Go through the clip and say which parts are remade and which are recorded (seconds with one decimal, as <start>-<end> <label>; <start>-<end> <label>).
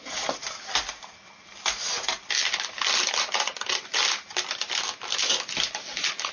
0.0-0.4 recorded; 0.4-2.7 remade; 2.7-6.3 recorded